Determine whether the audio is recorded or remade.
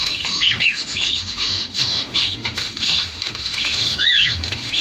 remade